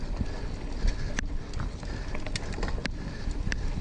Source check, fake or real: real